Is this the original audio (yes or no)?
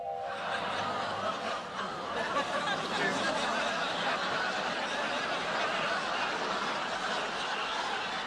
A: yes